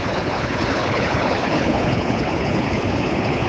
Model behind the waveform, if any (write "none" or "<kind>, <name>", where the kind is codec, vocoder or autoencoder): codec, HILCodec